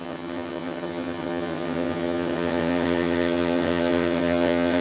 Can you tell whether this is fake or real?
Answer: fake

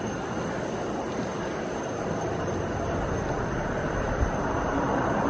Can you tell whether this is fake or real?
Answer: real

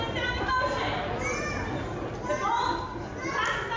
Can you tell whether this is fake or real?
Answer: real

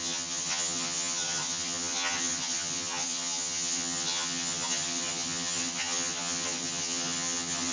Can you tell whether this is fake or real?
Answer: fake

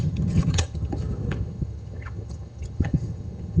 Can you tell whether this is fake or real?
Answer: fake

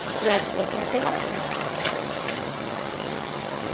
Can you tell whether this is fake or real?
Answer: fake